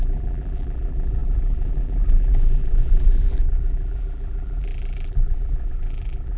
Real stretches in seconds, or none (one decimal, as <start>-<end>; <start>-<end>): none